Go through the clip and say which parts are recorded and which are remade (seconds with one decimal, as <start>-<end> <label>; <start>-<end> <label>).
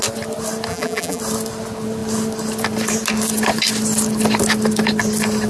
0.0-0.7 recorded; 0.7-1.2 remade; 1.2-5.5 recorded